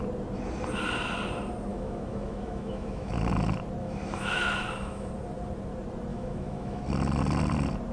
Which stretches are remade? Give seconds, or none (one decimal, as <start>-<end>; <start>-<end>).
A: 1.7-3.1; 3.8-5.1; 6.1-6.8